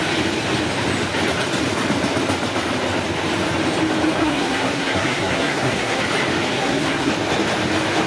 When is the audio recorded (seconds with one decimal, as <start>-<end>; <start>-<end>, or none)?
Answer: 0.0-4.2; 6.0-6.5; 7.1-8.1

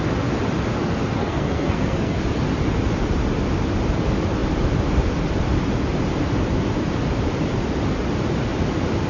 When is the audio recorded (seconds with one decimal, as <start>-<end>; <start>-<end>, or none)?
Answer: 0.0-1.2; 2.2-9.1

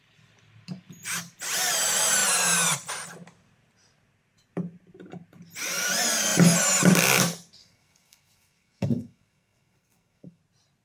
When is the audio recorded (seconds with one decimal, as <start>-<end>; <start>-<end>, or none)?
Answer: 0.0-7.6; 10.4-10.8

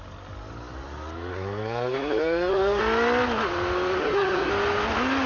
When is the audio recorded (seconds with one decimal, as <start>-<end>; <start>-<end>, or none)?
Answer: 0.0-1.3; 2.8-4.0; 4.5-5.3

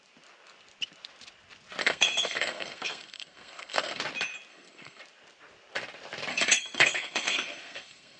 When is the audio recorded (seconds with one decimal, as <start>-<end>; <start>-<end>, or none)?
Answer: 0.0-1.8; 4.0-4.5; 5.0-6.3

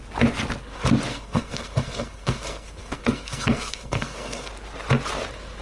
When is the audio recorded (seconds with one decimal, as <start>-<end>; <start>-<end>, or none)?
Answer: 0.0-1.1; 4.5-5.6

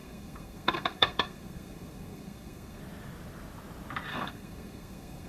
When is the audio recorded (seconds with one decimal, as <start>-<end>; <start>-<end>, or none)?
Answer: 2.8-4.1